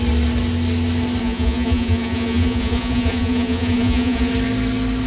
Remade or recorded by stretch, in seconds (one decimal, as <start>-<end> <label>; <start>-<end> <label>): 0.0-1.2 recorded; 1.2-4.3 remade; 4.3-5.1 recorded